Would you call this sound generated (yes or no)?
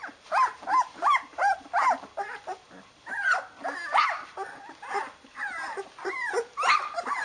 yes